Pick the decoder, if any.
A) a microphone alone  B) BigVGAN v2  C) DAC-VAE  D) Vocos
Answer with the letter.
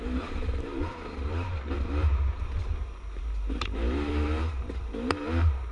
B